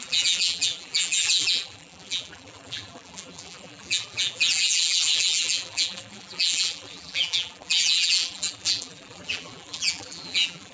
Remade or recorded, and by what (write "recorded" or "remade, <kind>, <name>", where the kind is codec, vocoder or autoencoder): remade, vocoder, BigVGAN v2